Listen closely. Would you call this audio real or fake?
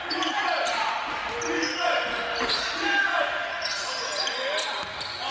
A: real